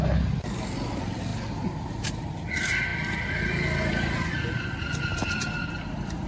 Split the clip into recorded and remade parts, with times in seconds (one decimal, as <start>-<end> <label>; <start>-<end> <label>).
0.0-6.3 recorded